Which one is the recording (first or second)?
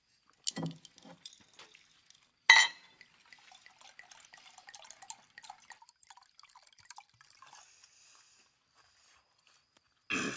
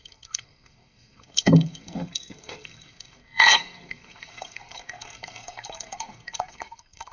first